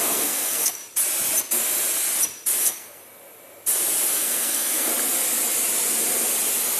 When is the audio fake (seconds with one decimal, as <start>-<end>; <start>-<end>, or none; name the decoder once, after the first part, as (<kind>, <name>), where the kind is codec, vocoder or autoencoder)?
0.0-0.8 (codec, SNAC); 2.6-3.0; 4.1-4.9